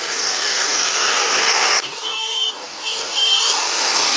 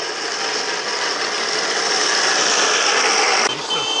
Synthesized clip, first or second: first